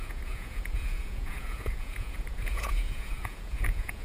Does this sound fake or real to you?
fake